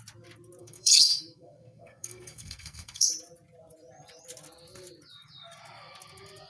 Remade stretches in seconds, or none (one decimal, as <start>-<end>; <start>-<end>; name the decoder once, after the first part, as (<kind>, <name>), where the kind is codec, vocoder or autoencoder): 0.6-3.1 (codec, SNAC)